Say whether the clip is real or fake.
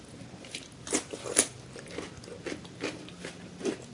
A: real